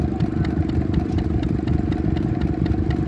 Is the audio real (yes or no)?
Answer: yes